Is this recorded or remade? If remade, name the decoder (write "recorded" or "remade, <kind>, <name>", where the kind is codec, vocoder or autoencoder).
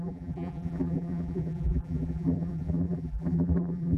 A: remade, vocoder, BigVGAN v2